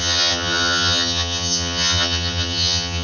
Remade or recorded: remade